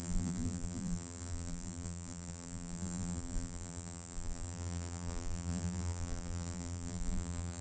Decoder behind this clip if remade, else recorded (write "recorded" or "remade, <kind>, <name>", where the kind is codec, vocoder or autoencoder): remade, vocoder, BigVGAN v2